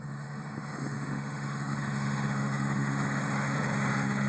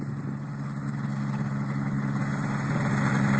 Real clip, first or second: second